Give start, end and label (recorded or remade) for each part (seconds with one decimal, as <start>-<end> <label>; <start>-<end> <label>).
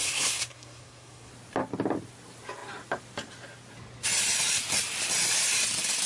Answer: 0.0-1.3 remade; 1.3-6.1 recorded